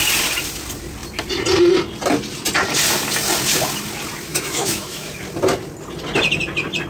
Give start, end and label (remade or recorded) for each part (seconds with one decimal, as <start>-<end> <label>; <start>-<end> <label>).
0.0-4.3 recorded; 4.3-5.1 remade; 5.1-6.9 recorded